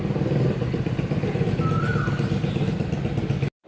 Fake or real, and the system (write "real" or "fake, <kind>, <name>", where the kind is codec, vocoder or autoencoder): real